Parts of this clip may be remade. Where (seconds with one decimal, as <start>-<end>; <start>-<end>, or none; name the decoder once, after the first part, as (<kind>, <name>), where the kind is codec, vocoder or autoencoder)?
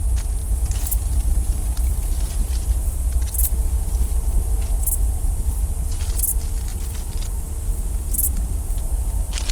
0.4-2.5 (vocoder, BigVGAN v2); 6.7-7.4